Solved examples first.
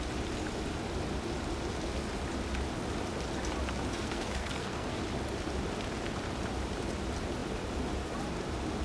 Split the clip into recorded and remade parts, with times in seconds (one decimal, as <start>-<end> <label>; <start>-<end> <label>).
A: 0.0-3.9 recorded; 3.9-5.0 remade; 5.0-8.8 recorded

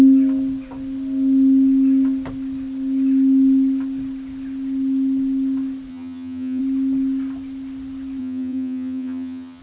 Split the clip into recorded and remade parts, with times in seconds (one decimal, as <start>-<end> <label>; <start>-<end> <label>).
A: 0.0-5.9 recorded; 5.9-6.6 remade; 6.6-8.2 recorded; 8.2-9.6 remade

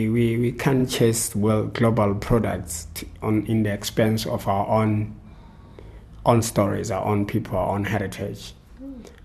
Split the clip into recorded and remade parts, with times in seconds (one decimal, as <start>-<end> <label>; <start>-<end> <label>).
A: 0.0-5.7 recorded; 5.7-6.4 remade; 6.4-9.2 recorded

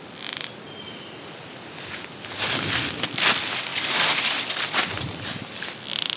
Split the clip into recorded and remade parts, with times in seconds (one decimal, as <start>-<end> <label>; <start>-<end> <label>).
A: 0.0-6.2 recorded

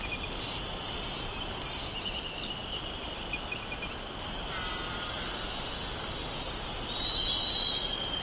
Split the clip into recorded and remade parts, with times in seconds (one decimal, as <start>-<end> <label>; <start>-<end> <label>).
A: 0.0-4.4 recorded; 4.4-5.7 remade; 5.7-8.2 recorded

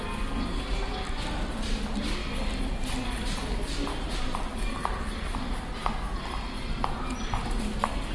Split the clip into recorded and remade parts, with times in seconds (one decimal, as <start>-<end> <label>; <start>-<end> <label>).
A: 0.0-8.1 recorded

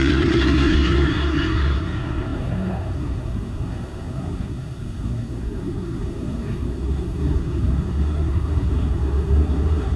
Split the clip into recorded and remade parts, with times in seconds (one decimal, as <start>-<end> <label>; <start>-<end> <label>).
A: 0.0-10.0 remade

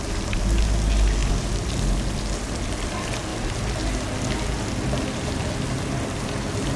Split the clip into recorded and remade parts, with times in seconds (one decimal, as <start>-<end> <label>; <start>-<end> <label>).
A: 0.0-6.8 recorded